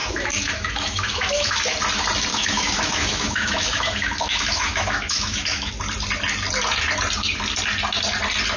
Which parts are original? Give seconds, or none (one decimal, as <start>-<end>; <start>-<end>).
1.6-2.3; 5.7-8.6